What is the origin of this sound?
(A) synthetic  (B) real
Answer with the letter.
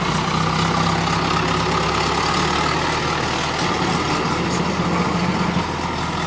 B